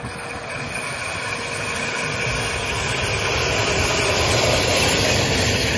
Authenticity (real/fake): real